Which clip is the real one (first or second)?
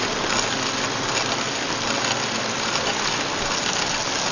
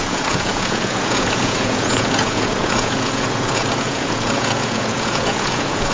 first